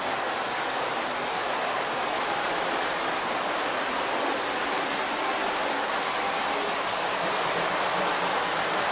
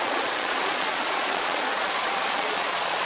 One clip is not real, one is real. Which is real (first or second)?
first